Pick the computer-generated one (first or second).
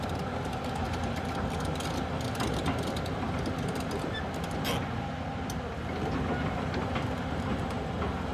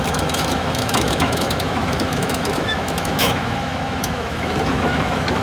second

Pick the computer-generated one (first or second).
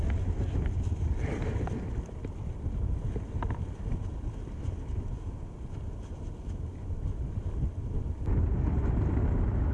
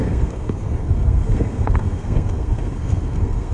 second